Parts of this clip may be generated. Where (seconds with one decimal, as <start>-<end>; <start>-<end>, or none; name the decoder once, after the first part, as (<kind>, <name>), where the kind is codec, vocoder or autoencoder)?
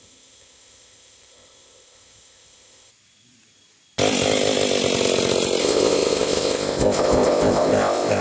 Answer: 0.0-2.9 (codec, ZipCodec); 5.6-8.2